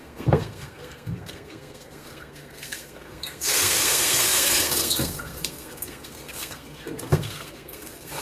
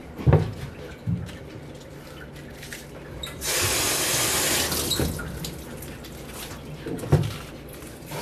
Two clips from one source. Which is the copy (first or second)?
first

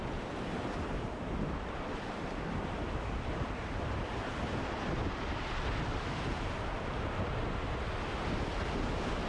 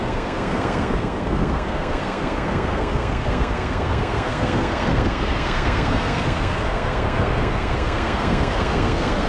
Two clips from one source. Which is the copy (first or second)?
second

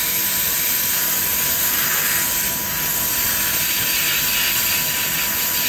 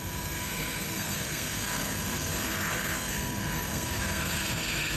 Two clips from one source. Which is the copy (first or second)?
second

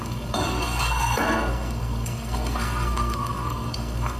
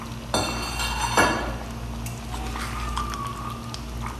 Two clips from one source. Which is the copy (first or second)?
first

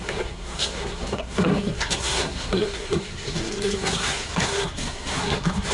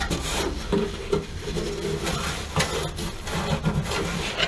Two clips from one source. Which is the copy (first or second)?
first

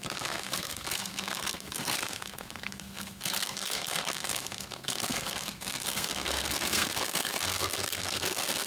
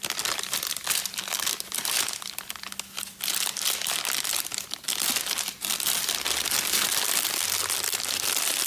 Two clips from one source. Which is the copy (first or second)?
first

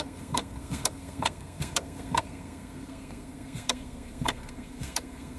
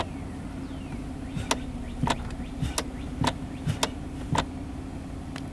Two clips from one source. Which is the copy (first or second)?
first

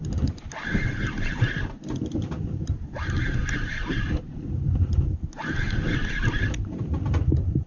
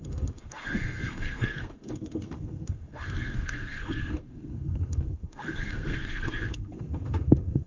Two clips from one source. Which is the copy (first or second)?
second